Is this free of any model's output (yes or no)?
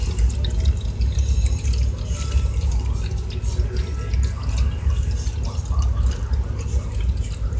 yes